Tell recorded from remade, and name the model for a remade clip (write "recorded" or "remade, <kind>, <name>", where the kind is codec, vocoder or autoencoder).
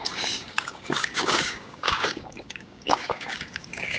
remade, codec, DAC